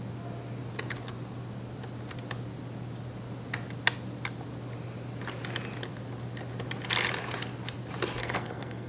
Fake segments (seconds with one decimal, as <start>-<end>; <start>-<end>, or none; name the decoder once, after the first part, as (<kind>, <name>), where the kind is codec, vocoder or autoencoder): 8.2-8.9 (codec, SNAC)